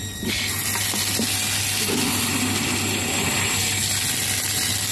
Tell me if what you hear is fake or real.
real